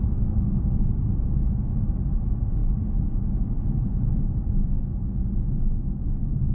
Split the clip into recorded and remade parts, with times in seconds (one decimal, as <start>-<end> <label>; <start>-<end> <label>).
0.0-6.5 recorded